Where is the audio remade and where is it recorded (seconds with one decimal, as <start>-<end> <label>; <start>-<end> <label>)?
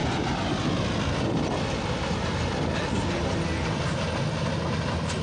0.0-5.2 recorded